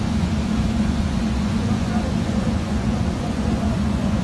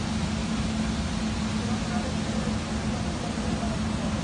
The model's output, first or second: first